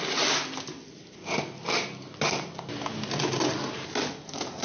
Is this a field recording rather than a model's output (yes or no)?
yes